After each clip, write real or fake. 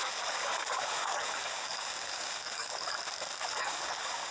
fake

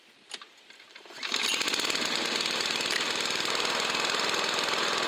fake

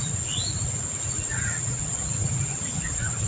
fake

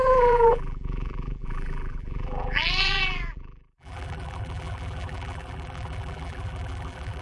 fake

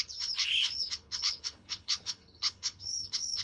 fake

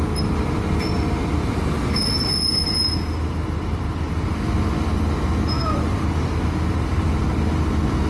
real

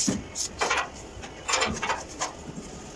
real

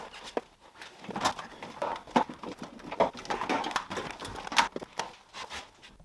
real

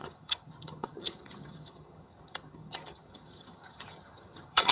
fake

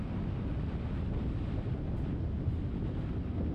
real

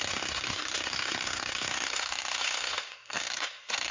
fake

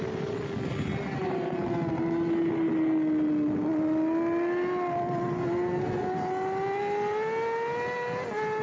real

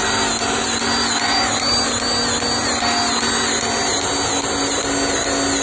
real